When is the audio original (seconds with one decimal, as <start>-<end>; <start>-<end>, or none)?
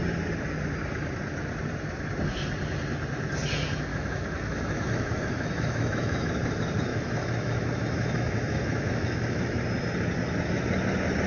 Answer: 0.0-3.9; 6.3-6.9; 9.6-11.3